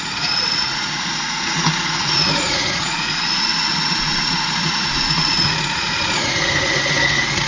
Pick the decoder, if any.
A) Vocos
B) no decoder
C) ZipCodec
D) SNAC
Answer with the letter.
A